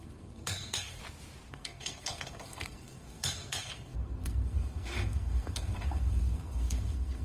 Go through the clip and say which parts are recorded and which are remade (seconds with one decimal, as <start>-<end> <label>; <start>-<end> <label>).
0.0-1.0 remade; 1.0-1.5 recorded; 1.5-7.2 remade